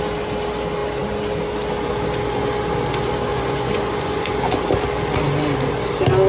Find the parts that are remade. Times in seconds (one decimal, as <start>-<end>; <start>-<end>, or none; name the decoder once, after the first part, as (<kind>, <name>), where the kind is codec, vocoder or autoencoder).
3.3-4.5 (vocoder, Vocos)